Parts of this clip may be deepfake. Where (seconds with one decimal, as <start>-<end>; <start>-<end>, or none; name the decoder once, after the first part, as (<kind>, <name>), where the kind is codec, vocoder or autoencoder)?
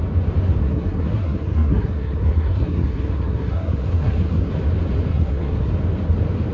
0.6-4.5 (codec, SNAC); 5.1-5.7